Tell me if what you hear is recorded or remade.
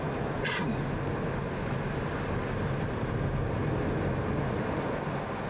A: recorded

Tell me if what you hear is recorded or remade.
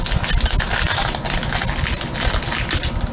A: recorded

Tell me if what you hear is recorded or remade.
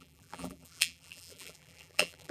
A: remade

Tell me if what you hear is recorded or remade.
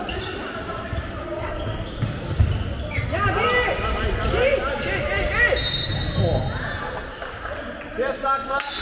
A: recorded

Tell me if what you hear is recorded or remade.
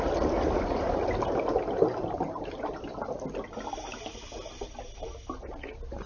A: recorded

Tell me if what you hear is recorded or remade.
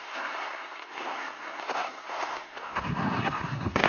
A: remade